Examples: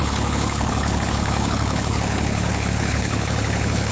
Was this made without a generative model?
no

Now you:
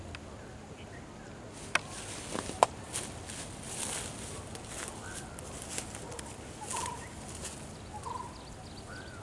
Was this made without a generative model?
yes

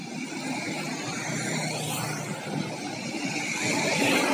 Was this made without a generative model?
yes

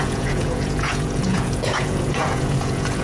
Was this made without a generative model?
no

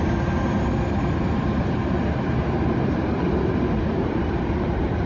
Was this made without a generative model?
yes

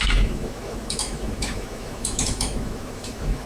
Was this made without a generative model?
no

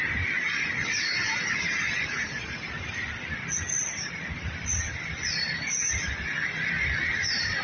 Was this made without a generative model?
no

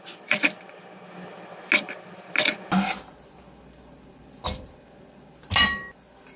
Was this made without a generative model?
yes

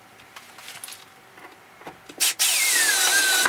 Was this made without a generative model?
yes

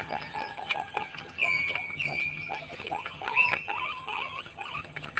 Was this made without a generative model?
no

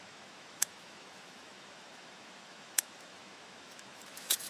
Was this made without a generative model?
no